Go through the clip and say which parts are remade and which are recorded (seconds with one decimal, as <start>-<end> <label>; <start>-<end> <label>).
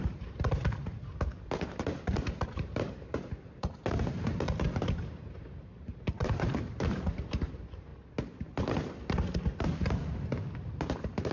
0.0-4.3 remade; 4.3-4.8 recorded; 4.8-7.9 remade; 7.9-10.7 recorded; 10.7-11.3 remade